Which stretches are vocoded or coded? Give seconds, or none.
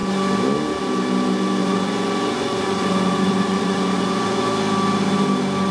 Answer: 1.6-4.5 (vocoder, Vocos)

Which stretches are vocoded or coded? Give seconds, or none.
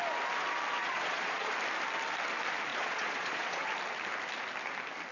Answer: 0.8-1.5 (vocoder, Vocos); 2.7-3.7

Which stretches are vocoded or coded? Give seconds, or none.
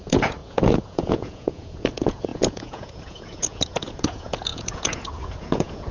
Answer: 0.0-5.9 (vocoder, Vocos)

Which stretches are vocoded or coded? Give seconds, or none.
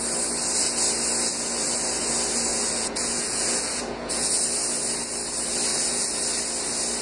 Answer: 2.5-4.4 (vocoder, Vocos); 5.7-6.2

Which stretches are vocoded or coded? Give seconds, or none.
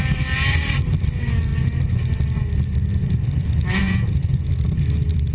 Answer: 3.8-4.4 (vocoder, Vocos)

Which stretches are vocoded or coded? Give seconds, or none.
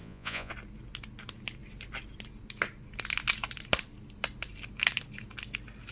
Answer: 0.0-0.5 (vocoder, Vocos)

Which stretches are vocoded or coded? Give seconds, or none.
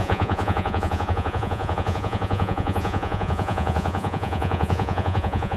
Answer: 0.0-5.6 (vocoder, Vocos)